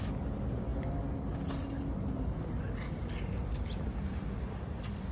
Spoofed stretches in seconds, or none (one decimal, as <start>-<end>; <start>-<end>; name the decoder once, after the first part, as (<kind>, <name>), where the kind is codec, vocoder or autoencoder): none